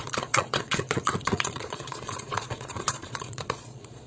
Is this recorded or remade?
remade